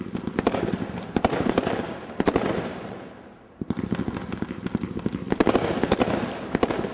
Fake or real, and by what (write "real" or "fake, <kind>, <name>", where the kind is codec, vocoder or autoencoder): real